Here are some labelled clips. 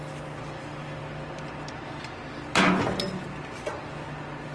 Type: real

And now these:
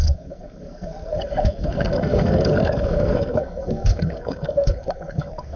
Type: fake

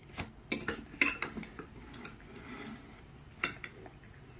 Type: real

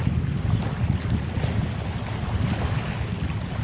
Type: real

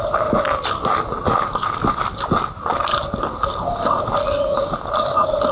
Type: real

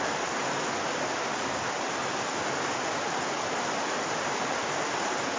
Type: real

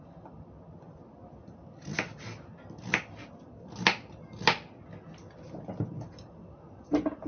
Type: real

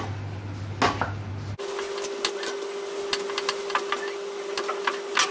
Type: real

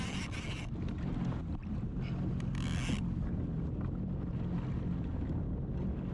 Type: real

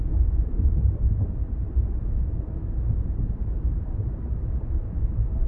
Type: fake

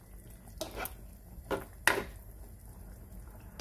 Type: real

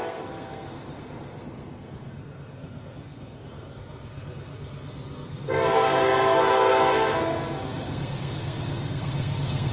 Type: fake